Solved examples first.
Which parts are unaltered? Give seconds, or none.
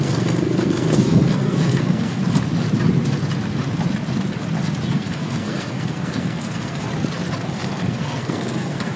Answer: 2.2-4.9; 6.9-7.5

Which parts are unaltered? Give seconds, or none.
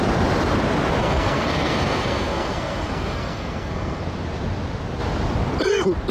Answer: 0.0-1.0; 4.0-6.1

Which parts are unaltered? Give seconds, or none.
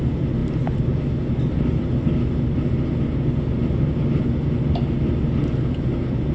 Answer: 0.0-6.3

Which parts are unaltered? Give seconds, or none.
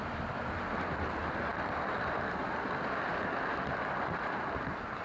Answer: 0.0-5.0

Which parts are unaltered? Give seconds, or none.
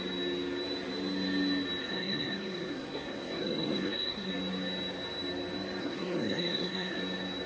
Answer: 0.0-1.8; 4.3-5.8; 7.0-7.5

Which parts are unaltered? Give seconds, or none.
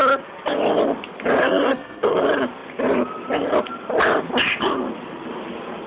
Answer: 0.0-1.4; 2.2-5.9